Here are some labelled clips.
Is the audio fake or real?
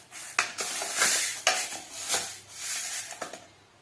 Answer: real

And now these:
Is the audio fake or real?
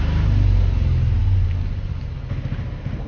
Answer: real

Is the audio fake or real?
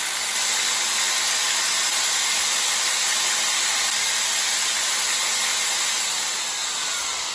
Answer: real